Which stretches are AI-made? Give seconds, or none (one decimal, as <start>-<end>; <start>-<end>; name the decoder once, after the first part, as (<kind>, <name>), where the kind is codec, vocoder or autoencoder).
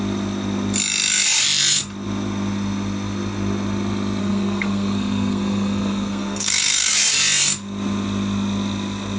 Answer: 4.2-6.9 (codec, SNAC)